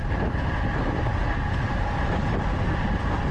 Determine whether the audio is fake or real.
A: real